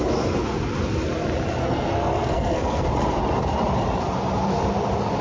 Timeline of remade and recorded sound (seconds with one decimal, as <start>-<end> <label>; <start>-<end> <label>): 0.0-1.6 recorded; 1.6-2.9 remade; 2.9-5.2 recorded